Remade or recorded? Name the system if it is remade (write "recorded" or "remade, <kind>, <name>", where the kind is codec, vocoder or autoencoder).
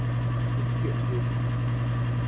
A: recorded